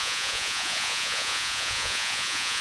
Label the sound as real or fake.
fake